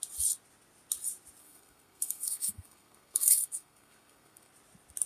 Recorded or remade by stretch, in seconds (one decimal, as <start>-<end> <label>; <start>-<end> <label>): 0.0-1.4 recorded; 1.4-4.5 remade; 4.5-5.1 recorded